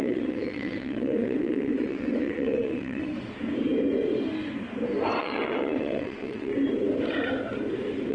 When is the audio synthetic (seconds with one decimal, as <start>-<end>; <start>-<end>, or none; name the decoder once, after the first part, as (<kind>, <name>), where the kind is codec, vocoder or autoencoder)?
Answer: 0.0-3.1 (vocoder, WaveNeXt); 5.2-6.5